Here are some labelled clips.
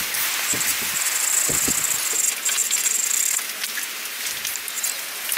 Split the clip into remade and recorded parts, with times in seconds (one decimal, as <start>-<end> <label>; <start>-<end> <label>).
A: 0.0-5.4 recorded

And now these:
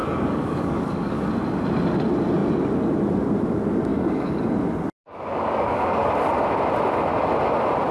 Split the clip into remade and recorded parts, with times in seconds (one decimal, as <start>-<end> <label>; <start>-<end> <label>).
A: 0.0-1.3 remade; 1.3-3.9 recorded; 3.9-4.4 remade; 4.4-5.0 recorded; 5.0-6.1 remade; 6.1-7.9 recorded

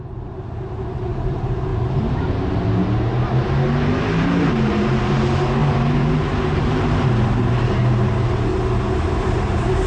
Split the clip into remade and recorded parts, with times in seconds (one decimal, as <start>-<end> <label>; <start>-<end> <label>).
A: 0.0-1.7 remade; 1.7-3.9 recorded; 3.9-8.5 remade; 8.5-9.2 recorded; 9.2-9.9 remade